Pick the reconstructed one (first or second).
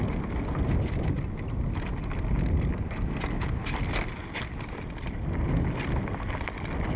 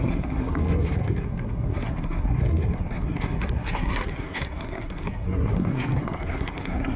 second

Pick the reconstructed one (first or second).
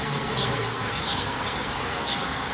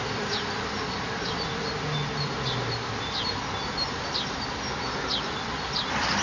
first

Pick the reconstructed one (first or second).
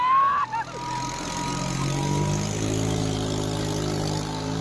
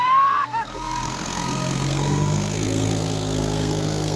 second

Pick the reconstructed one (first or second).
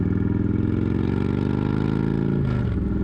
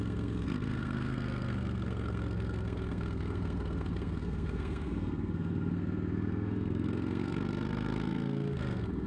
second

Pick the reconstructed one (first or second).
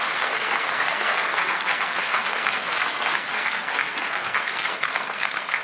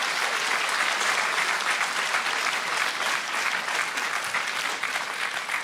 first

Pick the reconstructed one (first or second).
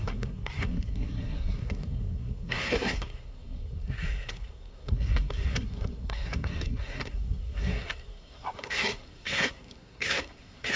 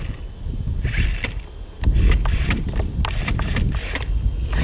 first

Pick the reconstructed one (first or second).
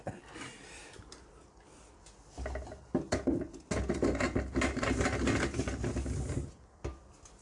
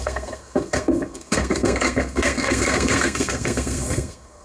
second